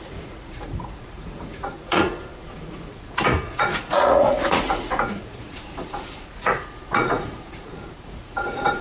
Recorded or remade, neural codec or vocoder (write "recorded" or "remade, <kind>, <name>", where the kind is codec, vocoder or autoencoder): remade, vocoder, Vocos